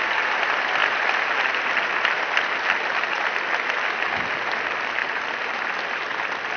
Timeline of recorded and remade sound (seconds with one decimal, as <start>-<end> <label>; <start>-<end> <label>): 0.0-6.6 recorded

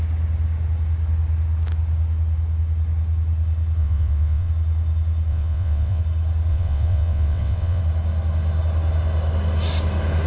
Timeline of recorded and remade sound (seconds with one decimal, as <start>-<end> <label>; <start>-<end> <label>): 0.0-3.8 recorded; 3.8-4.5 remade; 4.5-5.3 recorded; 5.3-6.0 remade; 6.0-6.5 recorded; 6.5-7.8 remade; 7.8-10.3 recorded

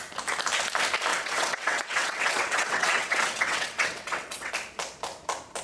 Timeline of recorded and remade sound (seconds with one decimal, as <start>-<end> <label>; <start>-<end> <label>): 0.0-1.1 recorded; 1.1-4.5 remade; 4.5-5.6 recorded

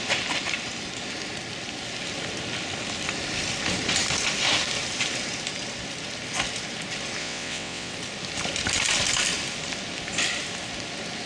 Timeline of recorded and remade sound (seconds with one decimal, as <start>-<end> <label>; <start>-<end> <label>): 0.0-7.2 recorded; 7.2-7.9 remade; 7.9-11.3 recorded

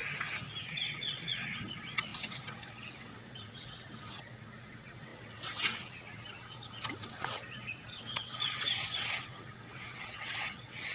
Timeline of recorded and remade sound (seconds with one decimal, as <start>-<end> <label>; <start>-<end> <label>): 0.0-0.6 recorded; 0.6-10.9 remade